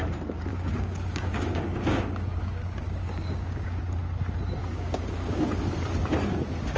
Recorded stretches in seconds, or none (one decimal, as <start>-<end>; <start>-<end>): 0.0-0.5; 3.8-4.6; 5.6-6.8